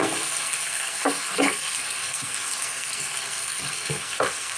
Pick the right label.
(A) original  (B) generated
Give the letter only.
B